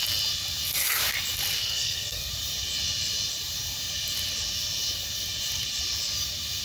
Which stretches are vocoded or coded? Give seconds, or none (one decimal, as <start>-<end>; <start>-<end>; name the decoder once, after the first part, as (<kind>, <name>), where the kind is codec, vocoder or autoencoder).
1.6-2.3 (codec, SNAC)